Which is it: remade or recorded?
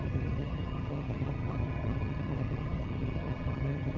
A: remade